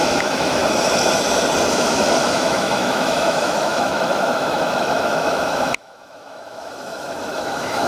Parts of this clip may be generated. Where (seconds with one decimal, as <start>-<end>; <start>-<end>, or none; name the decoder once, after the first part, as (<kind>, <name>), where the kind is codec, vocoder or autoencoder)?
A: 0.0-0.6 (autoencoder, DAC-VAE); 1.7-7.9